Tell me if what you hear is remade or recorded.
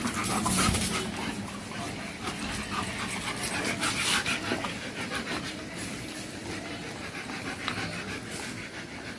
recorded